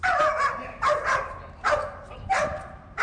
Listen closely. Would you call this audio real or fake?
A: fake